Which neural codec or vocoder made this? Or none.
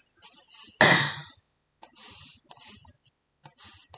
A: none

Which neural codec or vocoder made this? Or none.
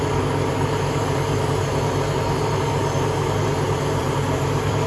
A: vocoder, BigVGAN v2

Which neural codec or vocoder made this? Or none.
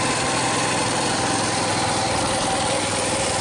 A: none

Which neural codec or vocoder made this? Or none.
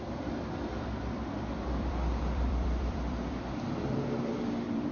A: vocoder, BigVGAN v2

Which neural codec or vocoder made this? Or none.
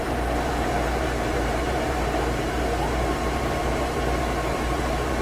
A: vocoder, BigVGAN v2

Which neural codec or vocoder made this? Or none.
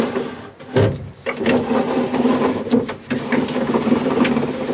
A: none